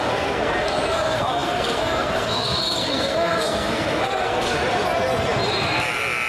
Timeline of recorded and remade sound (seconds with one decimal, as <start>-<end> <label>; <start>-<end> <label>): 0.0-4.6 remade; 4.6-6.3 recorded